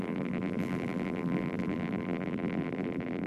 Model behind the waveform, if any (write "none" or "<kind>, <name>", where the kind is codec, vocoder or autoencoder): vocoder, BigVGAN v2